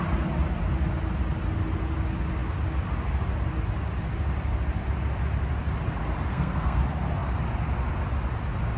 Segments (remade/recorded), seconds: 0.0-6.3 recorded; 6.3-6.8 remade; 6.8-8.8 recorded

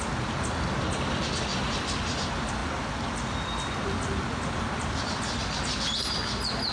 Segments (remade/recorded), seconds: 0.0-6.7 recorded

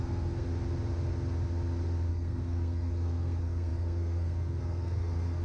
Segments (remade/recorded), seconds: 0.0-0.5 remade; 0.5-2.1 recorded; 2.1-5.4 remade